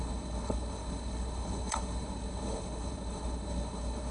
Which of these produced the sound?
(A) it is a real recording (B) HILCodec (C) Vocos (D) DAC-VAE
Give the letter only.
B